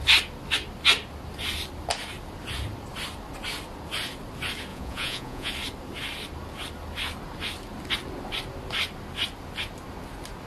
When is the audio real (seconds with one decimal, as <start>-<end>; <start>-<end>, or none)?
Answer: 0.0-4.7; 5.5-10.5